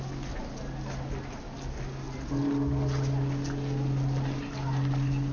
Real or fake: real